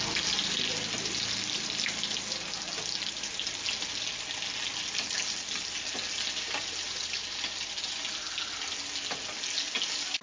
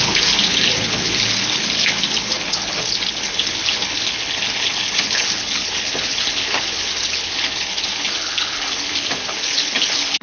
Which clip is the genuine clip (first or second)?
first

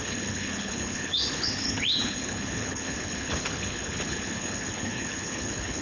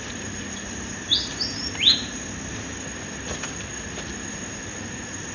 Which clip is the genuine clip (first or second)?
second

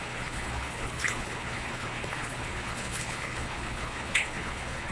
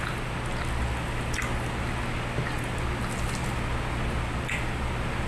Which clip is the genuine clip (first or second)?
second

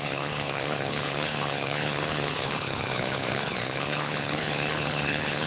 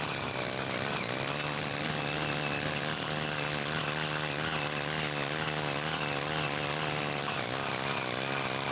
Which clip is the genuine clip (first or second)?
second